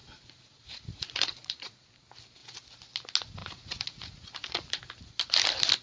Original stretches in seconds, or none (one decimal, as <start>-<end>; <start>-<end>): 1.9-3.4; 4.8-5.8